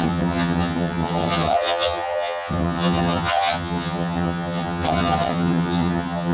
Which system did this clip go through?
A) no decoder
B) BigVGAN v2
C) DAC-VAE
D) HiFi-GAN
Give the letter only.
D